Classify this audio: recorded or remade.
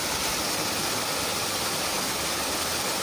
recorded